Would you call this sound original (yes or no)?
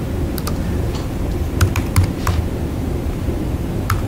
yes